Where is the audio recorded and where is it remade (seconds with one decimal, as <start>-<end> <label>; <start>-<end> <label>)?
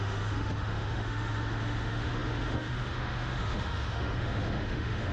0.0-5.1 remade